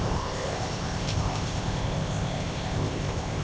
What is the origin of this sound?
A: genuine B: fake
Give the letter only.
B